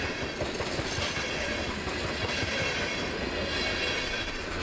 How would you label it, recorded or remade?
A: recorded